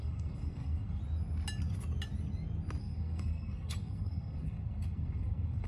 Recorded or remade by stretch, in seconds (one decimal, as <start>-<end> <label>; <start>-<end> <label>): 0.0-1.0 remade; 1.0-2.8 recorded; 2.8-5.7 remade